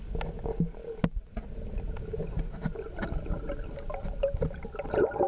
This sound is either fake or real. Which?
real